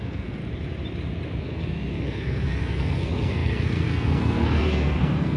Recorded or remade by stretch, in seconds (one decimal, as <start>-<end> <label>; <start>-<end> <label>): 0.0-0.4 remade; 0.4-1.4 recorded; 1.4-5.4 remade